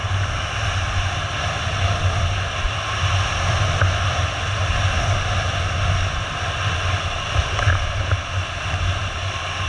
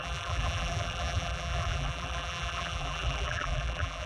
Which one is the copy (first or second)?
second